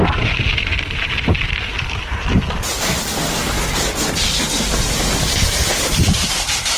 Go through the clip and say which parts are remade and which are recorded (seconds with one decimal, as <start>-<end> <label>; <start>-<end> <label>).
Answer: 0.0-2.7 remade; 2.7-5.2 recorded; 5.2-6.8 remade